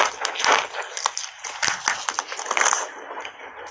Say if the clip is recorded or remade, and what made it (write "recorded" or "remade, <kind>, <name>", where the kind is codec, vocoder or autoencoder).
recorded